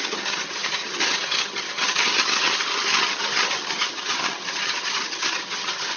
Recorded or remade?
remade